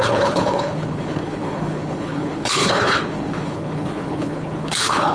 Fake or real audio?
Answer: fake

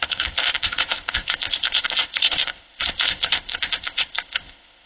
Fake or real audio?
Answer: fake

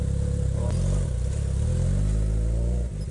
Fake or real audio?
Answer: real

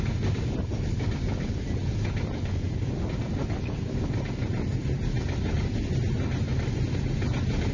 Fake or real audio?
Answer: real